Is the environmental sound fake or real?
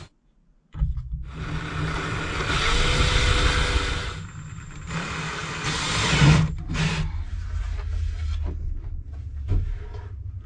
real